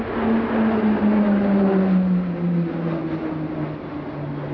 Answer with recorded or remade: recorded